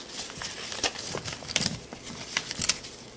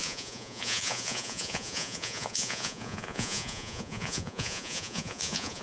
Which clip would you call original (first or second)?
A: first